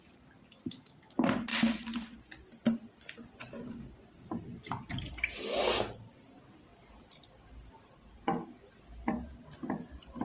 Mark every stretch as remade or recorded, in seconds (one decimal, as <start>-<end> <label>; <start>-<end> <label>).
0.0-10.2 recorded